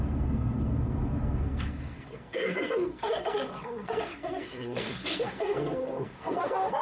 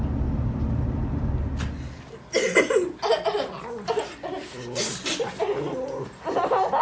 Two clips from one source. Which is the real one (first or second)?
second